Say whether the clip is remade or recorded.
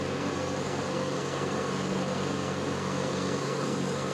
remade